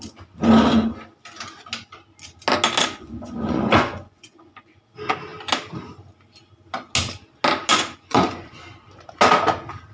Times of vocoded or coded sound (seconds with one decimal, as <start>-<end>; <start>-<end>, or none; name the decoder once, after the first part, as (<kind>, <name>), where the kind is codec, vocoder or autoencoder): 2.8-4.8 (vocoder, Vocos); 7.7-8.5